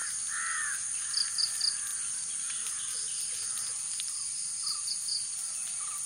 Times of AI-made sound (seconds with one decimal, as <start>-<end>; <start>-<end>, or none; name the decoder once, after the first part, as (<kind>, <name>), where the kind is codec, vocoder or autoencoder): none